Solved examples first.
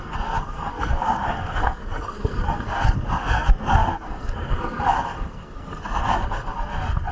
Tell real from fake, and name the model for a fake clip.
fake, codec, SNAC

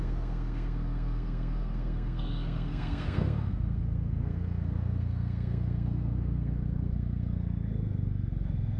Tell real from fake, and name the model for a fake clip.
fake, codec, SNAC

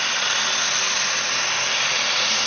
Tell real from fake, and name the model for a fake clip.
real